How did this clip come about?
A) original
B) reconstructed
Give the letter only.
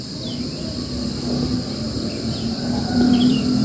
B